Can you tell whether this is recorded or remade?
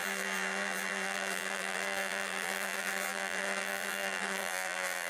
remade